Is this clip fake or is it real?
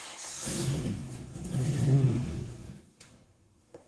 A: fake